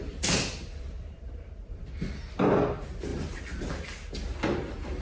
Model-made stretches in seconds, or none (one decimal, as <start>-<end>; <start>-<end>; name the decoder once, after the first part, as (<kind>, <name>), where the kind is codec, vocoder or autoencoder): 0.0-1.8 (vocoder, BigVGAN v2); 3.1-3.7

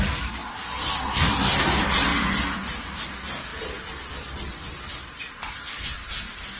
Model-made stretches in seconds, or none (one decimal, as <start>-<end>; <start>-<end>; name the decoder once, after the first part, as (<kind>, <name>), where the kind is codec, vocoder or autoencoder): 0.0-0.4 (vocoder, BigVGAN v2); 1.2-2.1; 3.0-6.6

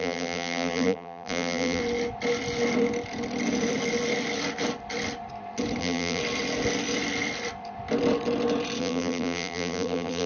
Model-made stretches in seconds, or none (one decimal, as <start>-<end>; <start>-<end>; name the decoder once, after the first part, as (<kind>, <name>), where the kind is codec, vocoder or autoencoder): 0.0-1.8 (vocoder, BigVGAN v2); 5.8-6.2; 8.8-10.3

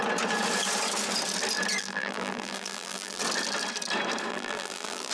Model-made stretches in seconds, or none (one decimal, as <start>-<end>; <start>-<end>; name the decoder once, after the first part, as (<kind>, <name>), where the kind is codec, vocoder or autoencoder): 1.8-3.2 (vocoder, BigVGAN v2); 4.3-5.1

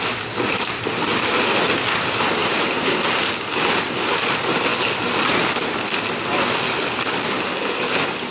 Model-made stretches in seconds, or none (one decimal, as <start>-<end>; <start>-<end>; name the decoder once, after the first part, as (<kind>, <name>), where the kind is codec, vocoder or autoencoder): 2.4-3.3 (vocoder, BigVGAN v2)

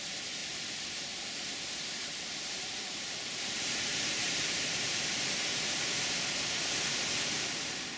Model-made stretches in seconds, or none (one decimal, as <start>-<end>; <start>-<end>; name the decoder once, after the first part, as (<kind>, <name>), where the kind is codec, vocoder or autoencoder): 0.4-4.8 (vocoder, BigVGAN v2)

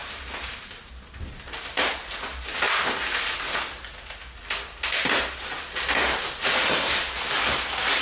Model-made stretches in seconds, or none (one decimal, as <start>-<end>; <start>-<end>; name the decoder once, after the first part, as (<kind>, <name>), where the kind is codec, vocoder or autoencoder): 0.0-0.9 (vocoder, BigVGAN v2)